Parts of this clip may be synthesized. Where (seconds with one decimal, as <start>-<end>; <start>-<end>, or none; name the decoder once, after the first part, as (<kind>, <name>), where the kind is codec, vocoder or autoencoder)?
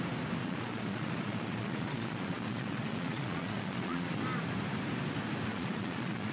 0.4-4.2 (vocoder, Vocos); 5.5-6.3